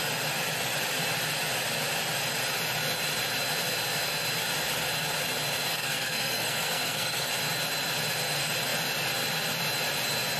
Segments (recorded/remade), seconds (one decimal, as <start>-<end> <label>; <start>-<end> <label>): 0.0-5.7 recorded; 5.7-7.3 remade; 7.3-10.4 recorded